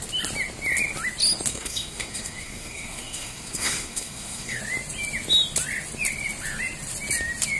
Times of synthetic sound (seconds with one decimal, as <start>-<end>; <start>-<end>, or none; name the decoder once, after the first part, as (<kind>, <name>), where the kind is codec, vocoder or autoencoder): 1.5-4.6 (codec, SNAC)